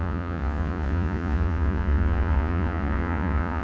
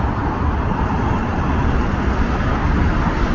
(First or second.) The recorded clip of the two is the second